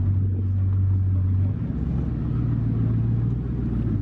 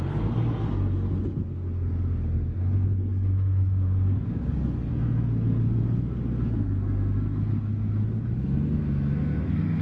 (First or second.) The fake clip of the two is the second